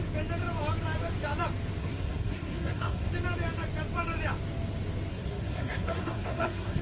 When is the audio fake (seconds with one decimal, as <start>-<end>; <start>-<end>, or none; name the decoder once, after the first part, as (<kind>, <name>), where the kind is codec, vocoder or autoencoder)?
1.8-3.1 (codec, SNAC); 5.1-6.8